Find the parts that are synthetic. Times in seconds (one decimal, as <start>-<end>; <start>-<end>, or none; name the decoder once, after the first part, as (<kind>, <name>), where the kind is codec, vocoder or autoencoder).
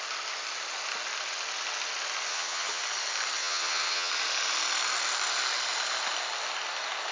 2.3-2.8 (vocoder, HiFi-GAN); 3.4-4.1